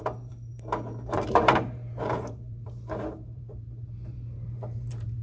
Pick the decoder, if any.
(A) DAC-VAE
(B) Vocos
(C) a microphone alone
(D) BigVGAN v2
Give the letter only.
D